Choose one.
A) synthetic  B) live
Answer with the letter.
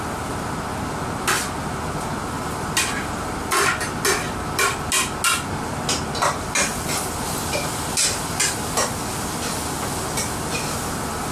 B